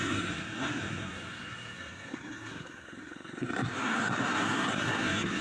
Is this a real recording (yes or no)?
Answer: no